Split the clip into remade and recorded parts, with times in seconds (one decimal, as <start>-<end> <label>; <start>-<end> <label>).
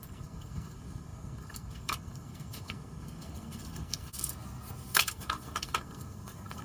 0.0-6.6 remade